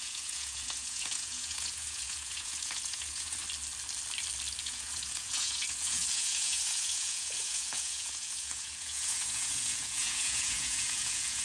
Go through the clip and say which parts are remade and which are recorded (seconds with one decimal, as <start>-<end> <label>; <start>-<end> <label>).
0.0-3.4 remade; 3.4-4.6 recorded; 4.6-11.4 remade